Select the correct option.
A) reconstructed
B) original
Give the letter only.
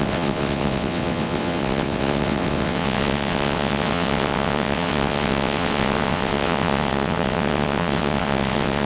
A